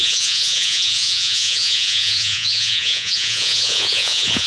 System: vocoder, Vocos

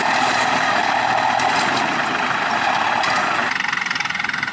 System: none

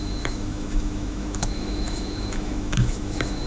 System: autoencoder, DAC-VAE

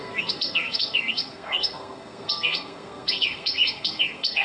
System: codec, SNAC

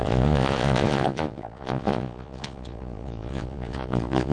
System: vocoder, Vocos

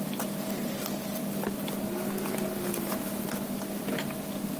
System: none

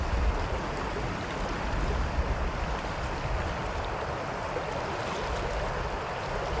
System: none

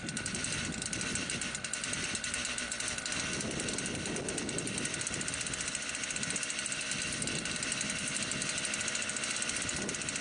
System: none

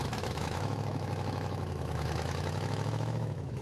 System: autoencoder, DAC-VAE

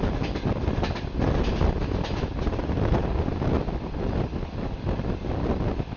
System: none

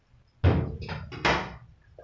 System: none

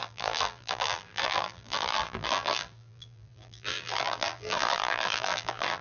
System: vocoder, BigVGAN v2